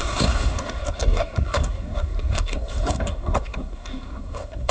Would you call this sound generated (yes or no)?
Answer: yes